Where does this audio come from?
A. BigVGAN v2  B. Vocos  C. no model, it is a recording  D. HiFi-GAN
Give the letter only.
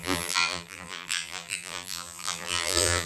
A